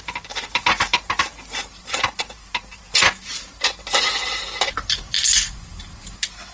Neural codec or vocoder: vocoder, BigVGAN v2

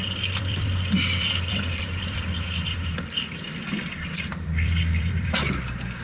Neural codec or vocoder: vocoder, BigVGAN v2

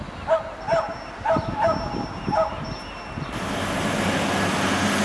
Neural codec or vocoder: none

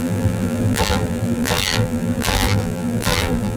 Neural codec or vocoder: vocoder, BigVGAN v2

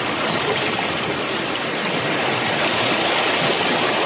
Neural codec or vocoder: none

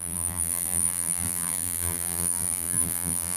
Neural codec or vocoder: vocoder, BigVGAN v2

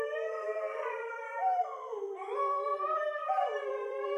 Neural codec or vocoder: vocoder, BigVGAN v2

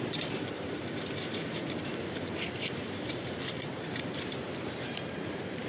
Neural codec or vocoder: vocoder, BigVGAN v2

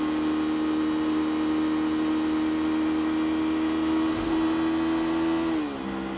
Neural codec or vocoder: none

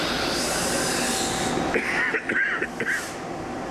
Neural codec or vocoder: none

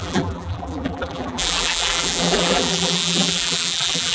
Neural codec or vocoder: vocoder, BigVGAN v2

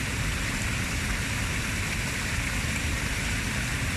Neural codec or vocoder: none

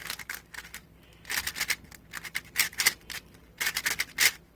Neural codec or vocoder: vocoder, BigVGAN v2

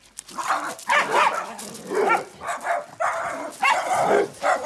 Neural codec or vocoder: vocoder, BigVGAN v2